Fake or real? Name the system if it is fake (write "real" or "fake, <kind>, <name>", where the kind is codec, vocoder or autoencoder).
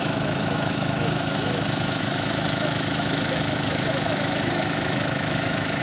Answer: fake, autoencoder, DAC-VAE